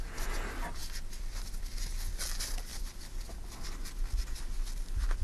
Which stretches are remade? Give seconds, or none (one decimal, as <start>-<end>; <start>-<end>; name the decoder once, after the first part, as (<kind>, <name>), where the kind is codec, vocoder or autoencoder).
none

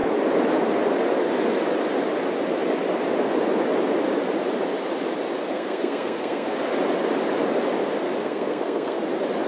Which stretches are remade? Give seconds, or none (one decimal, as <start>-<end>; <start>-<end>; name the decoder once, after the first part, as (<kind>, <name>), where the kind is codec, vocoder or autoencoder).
5.5-6.5 (codec, SNAC); 8.2-9.0

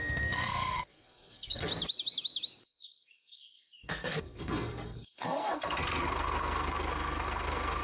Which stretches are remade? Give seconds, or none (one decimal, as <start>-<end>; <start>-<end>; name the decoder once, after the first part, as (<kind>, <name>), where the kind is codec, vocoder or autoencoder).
0.0-1.7 (codec, SNAC); 2.6-7.8

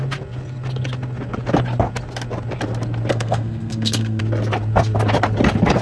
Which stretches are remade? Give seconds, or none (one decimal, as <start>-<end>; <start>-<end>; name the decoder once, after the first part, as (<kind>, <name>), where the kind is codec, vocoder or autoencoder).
3.1-4.2 (codec, SNAC)